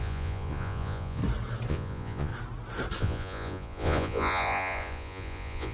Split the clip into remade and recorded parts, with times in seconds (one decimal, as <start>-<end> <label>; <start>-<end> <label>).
0.0-1.2 remade; 1.2-1.7 recorded; 1.7-2.3 remade; 2.3-3.0 recorded; 3.0-5.7 remade